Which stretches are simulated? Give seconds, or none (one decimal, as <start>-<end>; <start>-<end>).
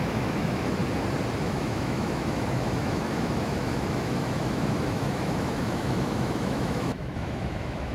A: 0.0-0.8; 1.4-7.9